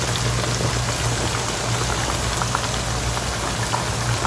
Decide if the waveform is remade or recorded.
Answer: recorded